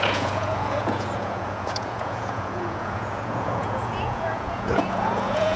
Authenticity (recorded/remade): remade